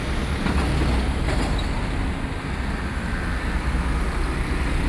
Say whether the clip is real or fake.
real